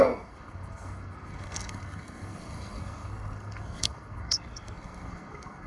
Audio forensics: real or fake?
fake